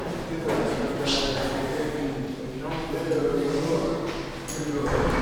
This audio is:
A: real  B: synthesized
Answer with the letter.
A